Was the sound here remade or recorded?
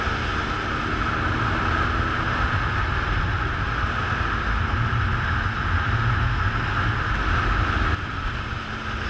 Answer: recorded